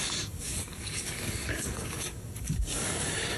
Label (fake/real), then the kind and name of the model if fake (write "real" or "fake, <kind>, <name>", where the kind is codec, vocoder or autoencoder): fake, codec, DAC